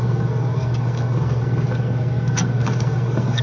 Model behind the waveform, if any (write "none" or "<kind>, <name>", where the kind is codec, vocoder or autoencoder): codec, SNAC